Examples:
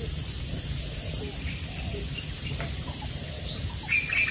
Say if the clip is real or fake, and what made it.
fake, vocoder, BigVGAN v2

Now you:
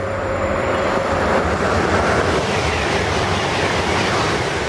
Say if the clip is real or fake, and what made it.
fake, vocoder, BigVGAN v2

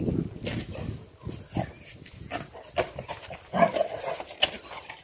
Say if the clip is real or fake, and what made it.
real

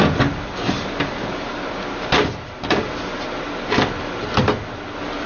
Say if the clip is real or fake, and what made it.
real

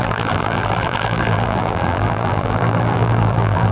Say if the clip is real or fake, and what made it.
fake, vocoder, BigVGAN v2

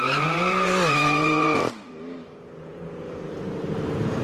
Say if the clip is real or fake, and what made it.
fake, vocoder, BigVGAN v2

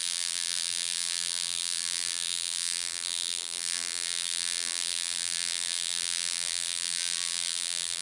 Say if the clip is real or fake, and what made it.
fake, vocoder, BigVGAN v2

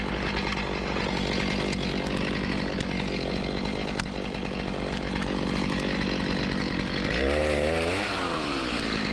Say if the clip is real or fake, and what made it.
real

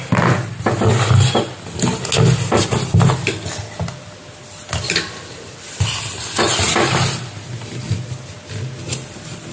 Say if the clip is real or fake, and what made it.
real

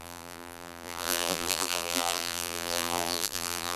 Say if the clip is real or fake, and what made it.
fake, vocoder, BigVGAN v2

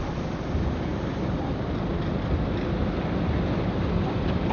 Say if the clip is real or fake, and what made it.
real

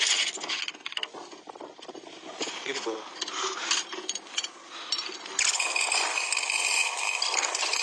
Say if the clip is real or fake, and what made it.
real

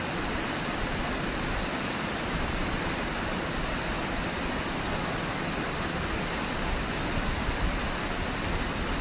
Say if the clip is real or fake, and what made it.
real